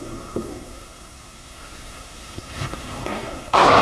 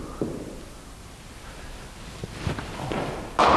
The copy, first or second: first